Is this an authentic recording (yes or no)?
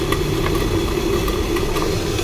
yes